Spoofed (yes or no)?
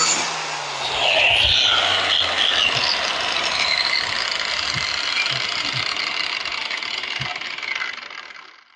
no